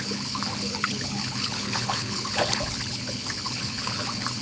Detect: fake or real fake